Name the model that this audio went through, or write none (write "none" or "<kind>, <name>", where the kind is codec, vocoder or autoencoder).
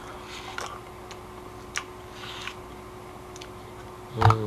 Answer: none